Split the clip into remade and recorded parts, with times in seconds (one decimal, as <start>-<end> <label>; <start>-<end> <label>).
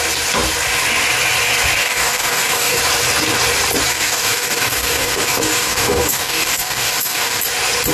0.0-1.8 recorded; 1.8-2.8 remade; 2.8-3.9 recorded; 3.9-7.4 remade; 7.4-7.9 recorded